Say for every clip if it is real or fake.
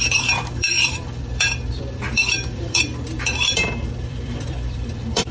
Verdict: fake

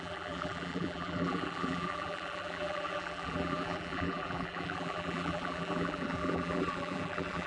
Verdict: fake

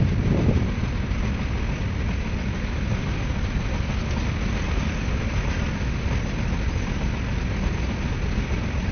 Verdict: real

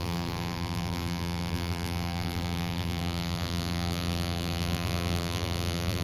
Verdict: fake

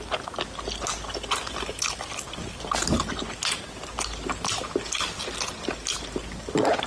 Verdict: real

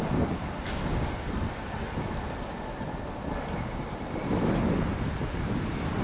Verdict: fake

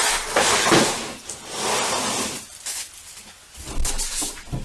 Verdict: real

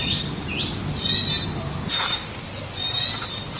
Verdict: real